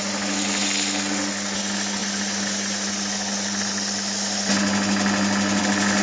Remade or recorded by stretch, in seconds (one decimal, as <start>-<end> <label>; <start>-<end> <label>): 0.0-6.0 recorded